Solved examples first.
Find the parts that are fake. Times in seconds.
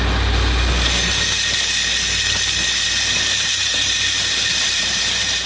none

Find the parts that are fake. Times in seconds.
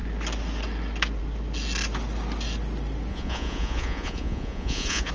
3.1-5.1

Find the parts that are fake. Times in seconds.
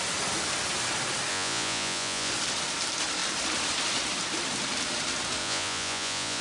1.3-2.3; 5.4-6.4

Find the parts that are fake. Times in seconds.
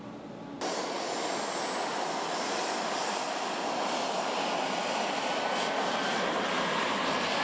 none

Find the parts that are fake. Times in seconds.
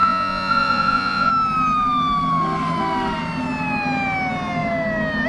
0.0-1.3